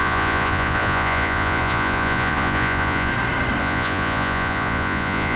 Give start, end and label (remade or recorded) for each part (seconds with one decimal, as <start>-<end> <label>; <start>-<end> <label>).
0.0-3.1 remade; 3.1-3.6 recorded; 3.6-5.4 remade